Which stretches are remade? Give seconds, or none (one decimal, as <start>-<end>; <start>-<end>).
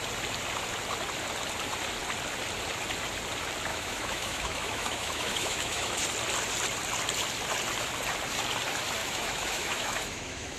3.7-6.0; 9.0-10.6